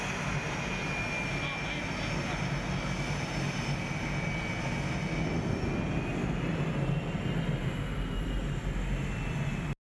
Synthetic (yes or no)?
no